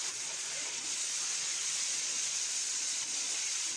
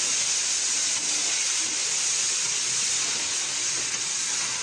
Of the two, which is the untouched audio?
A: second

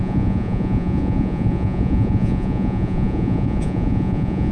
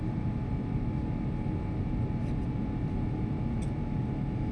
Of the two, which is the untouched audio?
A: second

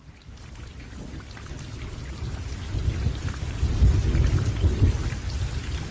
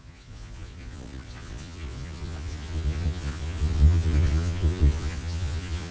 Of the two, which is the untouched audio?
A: first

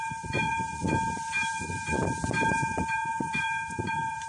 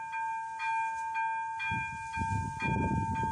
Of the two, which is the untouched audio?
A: second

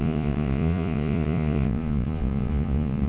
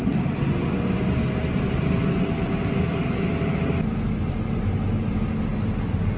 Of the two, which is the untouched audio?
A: second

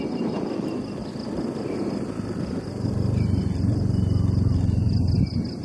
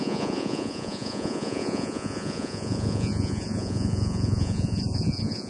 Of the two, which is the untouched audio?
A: first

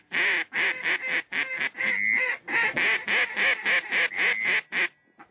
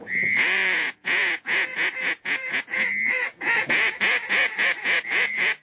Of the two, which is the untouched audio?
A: first